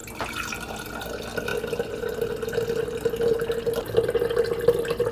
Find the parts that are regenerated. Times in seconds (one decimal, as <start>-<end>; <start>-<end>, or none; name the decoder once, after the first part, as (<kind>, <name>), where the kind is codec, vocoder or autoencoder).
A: none

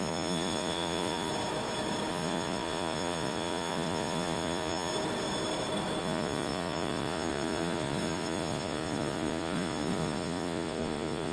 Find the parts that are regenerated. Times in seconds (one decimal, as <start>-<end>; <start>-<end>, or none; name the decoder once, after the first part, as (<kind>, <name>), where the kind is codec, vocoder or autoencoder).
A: 0.0-1.3 (vocoder, Vocos); 2.1-4.9; 6.0-11.3

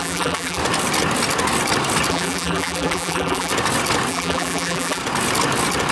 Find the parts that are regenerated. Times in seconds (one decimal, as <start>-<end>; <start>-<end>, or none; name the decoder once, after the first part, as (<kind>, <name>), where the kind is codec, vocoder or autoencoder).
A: 0.0-0.6 (vocoder, BigVGAN v2); 2.1-3.5; 4.1-5.0

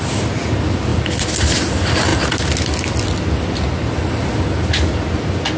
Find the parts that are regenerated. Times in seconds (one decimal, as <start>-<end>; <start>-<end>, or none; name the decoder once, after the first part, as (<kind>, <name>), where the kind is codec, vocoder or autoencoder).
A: none

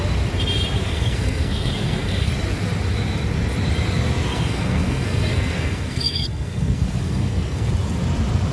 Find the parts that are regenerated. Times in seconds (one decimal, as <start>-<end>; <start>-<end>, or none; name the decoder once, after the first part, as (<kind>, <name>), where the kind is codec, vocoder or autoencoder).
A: 0.8-2.3 (codec, SNAC); 4.3-7.7

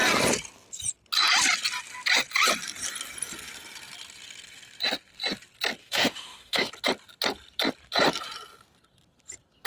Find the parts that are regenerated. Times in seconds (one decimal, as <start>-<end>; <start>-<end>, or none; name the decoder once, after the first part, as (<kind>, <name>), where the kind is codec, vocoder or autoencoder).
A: 5.8-6.7 (autoencoder, DAC-VAE)

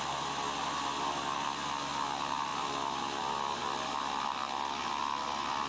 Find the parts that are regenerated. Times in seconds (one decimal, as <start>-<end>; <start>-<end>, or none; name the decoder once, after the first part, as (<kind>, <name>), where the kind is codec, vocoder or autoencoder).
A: none